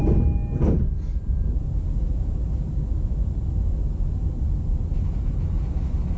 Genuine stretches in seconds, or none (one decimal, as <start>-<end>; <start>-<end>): 0.0-6.2